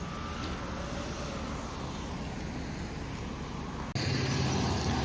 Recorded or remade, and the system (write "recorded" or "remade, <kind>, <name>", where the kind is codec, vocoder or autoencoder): recorded